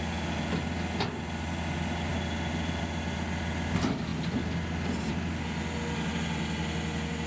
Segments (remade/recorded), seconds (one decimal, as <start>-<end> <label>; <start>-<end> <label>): 0.0-7.3 recorded